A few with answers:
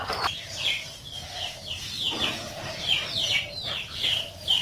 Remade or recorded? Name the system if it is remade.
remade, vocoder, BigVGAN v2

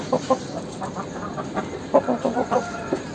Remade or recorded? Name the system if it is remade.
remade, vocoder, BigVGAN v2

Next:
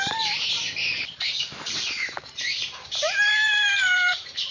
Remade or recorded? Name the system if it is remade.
remade, vocoder, BigVGAN v2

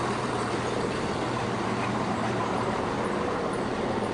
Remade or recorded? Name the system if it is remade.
remade, vocoder, BigVGAN v2